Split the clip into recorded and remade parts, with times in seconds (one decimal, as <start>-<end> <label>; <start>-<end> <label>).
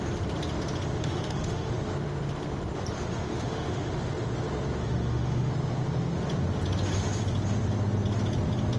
0.0-1.0 recorded; 1.0-1.7 remade; 1.7-3.2 recorded; 3.2-3.9 remade; 3.9-4.8 recorded; 4.8-5.5 remade; 5.5-8.8 recorded